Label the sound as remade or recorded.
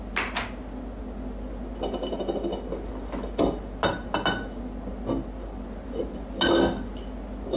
recorded